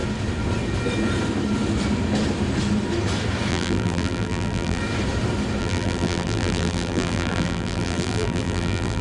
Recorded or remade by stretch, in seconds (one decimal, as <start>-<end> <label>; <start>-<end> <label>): 0.0-3.5 recorded; 3.5-4.8 remade; 4.8-5.6 recorded; 5.6-9.0 remade